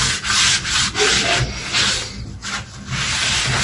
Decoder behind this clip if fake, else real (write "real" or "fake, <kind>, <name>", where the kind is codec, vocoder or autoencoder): real